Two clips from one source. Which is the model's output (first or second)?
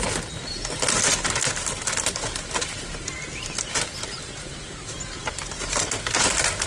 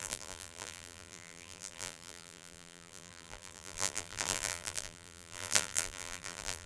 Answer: second